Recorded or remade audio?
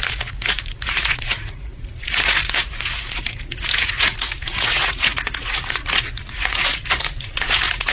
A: remade